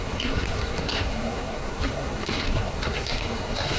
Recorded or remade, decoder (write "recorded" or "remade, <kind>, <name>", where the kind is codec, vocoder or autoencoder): remade, codec, SNAC